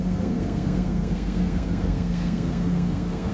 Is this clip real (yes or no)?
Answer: no